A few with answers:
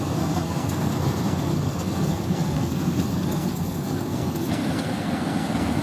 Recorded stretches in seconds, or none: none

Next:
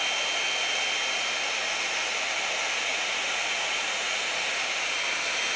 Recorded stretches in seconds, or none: 0.0-2.9; 4.2-5.6

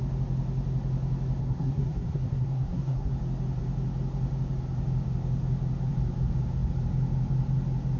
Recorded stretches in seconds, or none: 0.0-1.4; 3.1-8.0

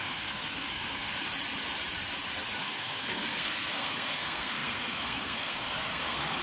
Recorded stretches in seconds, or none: 1.1-2.6

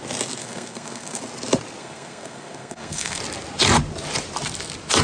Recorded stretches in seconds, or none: 0.0-0.4; 1.2-1.8; 3.2-5.0

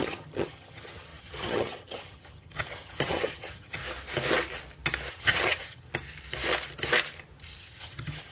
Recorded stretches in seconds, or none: 3.8-5.1; 5.9-7.6

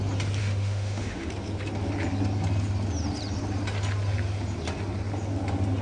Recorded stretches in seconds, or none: 0.0-0.4; 1.3-5.8